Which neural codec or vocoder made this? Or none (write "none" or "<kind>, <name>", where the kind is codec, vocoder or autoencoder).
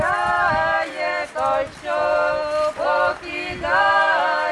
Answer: none